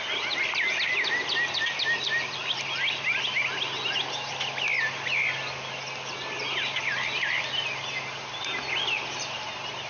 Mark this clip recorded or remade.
recorded